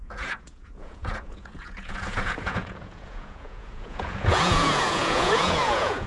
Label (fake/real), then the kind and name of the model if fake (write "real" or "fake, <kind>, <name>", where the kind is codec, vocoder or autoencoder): fake, vocoder, Vocos